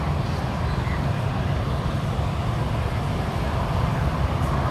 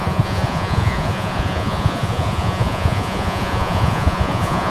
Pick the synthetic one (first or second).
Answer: second